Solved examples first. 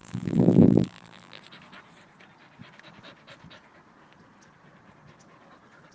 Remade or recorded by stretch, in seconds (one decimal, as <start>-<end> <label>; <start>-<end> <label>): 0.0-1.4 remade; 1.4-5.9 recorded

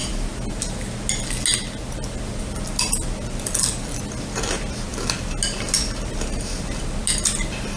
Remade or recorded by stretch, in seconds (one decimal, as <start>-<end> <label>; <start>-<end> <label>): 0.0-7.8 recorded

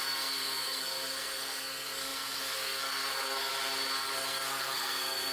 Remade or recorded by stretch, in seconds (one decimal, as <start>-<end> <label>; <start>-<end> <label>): 0.0-3.5 remade; 3.5-4.0 recorded; 4.0-5.3 remade

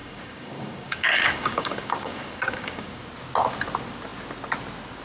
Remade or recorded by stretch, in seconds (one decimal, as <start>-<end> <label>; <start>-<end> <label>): 0.0-3.0 remade; 3.0-5.0 recorded